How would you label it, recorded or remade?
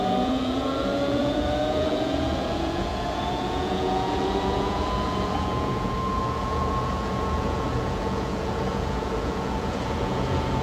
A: remade